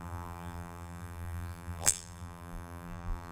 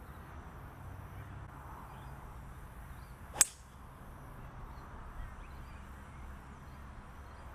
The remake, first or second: first